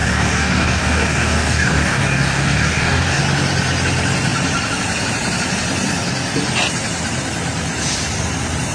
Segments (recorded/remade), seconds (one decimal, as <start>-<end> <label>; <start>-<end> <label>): 0.0-3.2 remade; 3.2-8.7 recorded